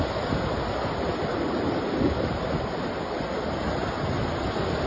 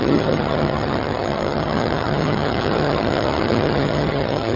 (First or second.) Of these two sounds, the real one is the first